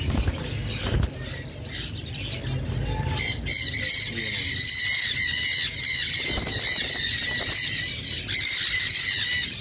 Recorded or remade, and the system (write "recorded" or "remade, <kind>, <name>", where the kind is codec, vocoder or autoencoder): recorded